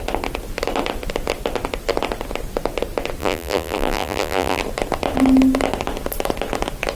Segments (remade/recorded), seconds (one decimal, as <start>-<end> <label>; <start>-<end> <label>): 0.0-3.2 recorded; 3.2-4.6 remade; 4.6-6.9 recorded